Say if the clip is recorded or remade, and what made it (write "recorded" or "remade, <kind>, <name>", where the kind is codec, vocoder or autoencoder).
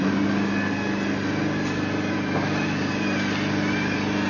recorded